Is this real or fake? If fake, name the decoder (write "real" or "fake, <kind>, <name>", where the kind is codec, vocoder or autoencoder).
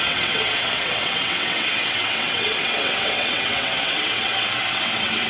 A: fake, vocoder, WaveNeXt